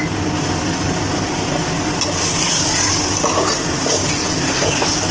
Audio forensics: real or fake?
real